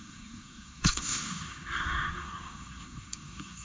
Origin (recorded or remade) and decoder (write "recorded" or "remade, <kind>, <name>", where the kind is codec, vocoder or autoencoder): remade, codec, SNAC